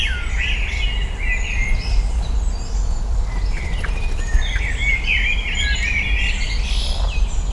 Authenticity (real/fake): real